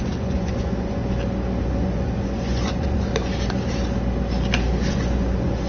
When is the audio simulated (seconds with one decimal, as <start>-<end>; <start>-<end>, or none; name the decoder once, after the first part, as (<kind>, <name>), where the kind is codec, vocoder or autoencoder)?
0.0-1.0 (vocoder, Vocos); 1.6-3.1; 4.9-5.7